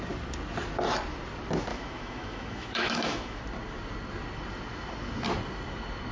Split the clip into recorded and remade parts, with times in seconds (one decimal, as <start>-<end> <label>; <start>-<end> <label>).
0.0-1.7 recorded; 1.7-3.4 remade; 3.4-6.1 recorded